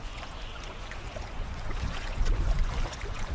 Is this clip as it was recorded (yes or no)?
no